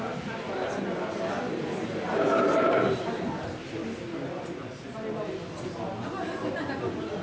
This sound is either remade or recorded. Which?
recorded